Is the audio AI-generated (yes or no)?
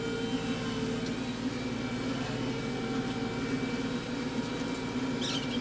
no